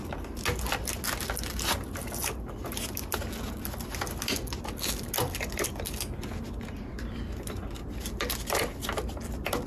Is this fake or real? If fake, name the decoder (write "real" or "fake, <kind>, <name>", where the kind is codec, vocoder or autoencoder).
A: real